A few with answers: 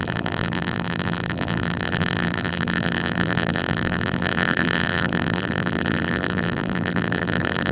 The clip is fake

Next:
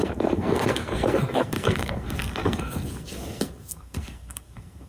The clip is fake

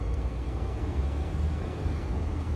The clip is fake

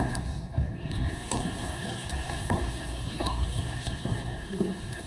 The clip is fake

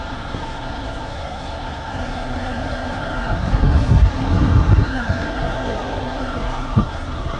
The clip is fake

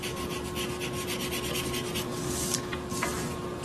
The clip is real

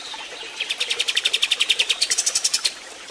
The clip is fake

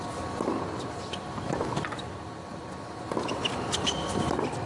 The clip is real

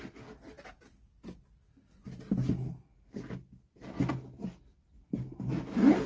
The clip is real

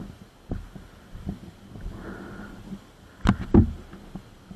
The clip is real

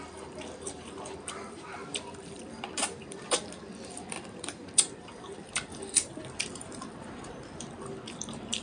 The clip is fake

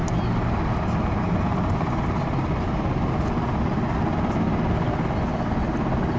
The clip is real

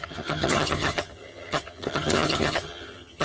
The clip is fake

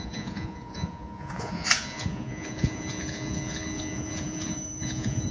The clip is fake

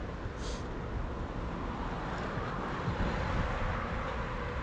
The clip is real